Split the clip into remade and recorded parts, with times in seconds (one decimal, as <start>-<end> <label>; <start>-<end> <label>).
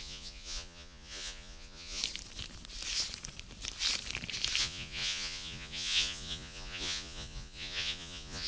0.0-2.0 remade; 2.0-4.6 recorded; 4.6-8.5 remade